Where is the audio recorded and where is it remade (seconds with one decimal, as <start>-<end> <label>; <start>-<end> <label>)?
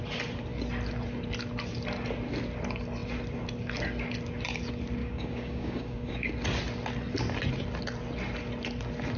0.0-5.0 recorded; 5.0-6.3 remade; 6.3-9.2 recorded